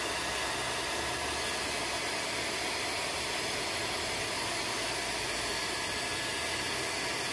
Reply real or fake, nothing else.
real